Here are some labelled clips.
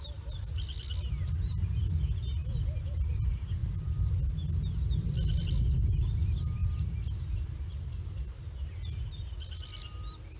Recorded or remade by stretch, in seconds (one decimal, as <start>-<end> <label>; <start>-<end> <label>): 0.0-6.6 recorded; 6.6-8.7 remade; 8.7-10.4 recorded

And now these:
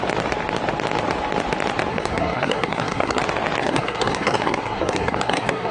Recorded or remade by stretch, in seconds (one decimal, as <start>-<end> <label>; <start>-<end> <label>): 0.0-1.9 recorded; 1.9-3.2 remade; 3.2-3.6 recorded; 3.6-5.7 remade

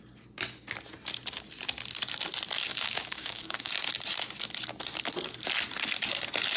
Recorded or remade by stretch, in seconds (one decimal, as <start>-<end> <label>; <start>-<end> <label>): 0.0-2.7 recorded; 2.7-3.7 remade; 3.7-6.6 recorded

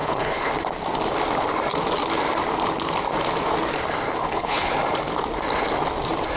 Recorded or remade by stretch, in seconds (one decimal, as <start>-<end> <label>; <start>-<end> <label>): 0.0-0.5 remade; 0.5-4.2 recorded; 4.2-4.7 remade; 4.7-6.4 recorded

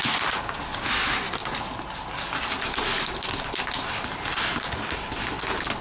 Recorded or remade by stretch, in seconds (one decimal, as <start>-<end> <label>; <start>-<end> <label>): 0.0-5.8 recorded